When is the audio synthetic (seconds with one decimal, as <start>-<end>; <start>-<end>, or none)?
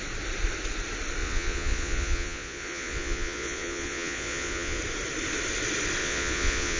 1.2-4.8; 6.0-6.8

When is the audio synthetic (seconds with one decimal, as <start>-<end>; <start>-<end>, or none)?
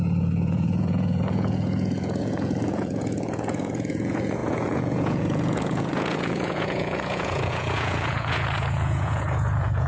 0.0-9.9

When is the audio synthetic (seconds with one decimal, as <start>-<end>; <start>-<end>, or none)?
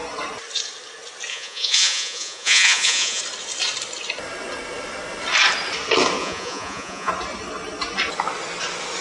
1.3-3.2; 6.2-7.1